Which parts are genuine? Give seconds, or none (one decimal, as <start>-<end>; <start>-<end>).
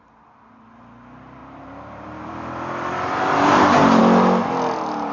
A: 0.0-1.4; 4.0-5.1